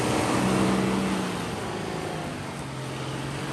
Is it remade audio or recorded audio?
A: recorded